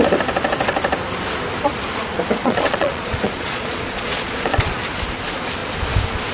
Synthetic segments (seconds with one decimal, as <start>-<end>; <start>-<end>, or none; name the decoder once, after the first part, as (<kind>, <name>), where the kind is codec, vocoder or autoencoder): 2.4-4.7 (vocoder, Vocos)